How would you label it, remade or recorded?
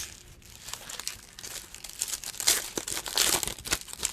recorded